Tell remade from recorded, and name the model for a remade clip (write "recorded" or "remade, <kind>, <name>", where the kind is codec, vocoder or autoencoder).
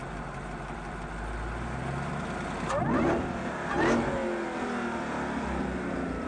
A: recorded